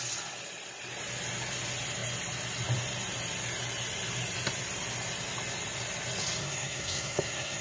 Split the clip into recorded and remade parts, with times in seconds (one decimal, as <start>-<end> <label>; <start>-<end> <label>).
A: 0.0-6.4 recorded; 6.4-7.6 remade